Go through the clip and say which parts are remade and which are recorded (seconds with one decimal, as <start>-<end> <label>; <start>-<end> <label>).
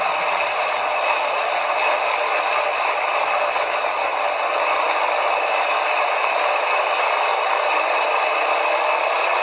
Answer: 0.0-9.4 recorded